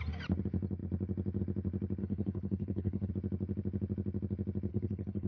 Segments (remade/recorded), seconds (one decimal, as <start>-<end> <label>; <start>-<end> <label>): 0.0-2.0 recorded; 2.0-3.1 remade; 3.1-4.7 recorded; 4.7-5.3 remade